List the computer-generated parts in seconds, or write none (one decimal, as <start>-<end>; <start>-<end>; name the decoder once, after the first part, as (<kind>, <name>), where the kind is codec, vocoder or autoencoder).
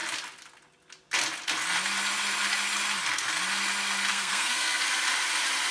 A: 4.1-4.8 (codec, SNAC)